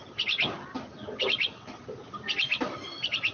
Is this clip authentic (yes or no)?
yes